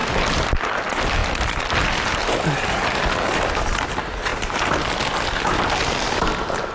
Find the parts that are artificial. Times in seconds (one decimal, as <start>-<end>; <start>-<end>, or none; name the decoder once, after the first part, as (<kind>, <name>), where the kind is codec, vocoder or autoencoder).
none